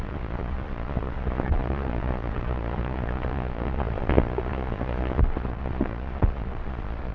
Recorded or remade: remade